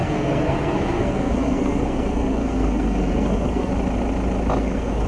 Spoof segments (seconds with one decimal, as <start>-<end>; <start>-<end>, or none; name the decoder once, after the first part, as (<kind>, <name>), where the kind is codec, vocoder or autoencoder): 0.0-3.7 (codec, SNAC); 4.6-5.1